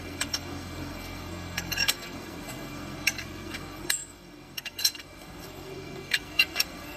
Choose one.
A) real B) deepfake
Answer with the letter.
B